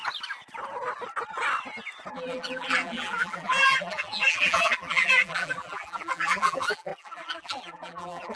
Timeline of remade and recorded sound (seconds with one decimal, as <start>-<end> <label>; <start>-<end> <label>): 0.0-2.1 recorded; 2.1-8.4 remade